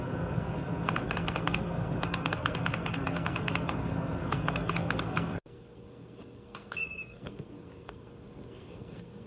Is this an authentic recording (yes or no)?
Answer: no